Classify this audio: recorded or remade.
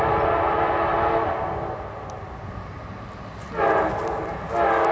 recorded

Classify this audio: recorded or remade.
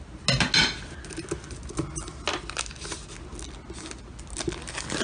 recorded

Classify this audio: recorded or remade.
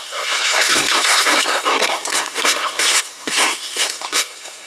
remade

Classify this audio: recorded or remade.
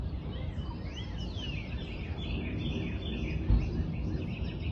recorded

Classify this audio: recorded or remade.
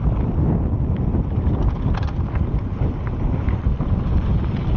remade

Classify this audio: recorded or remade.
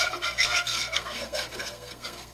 remade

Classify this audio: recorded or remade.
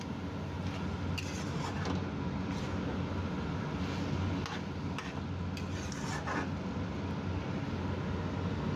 recorded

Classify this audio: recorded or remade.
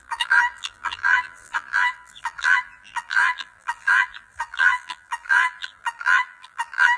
remade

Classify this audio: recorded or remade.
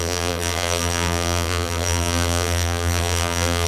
remade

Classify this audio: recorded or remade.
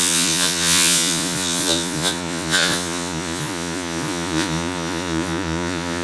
remade